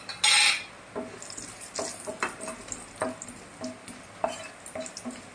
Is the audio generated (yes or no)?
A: no